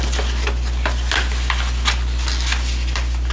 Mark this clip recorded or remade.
recorded